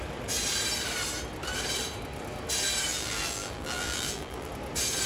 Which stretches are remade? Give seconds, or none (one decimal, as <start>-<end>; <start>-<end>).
2.9-4.5